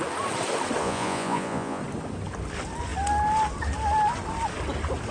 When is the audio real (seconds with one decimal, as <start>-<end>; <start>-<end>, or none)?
0.0-0.8; 1.8-5.1